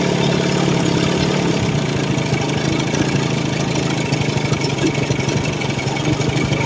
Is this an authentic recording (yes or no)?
yes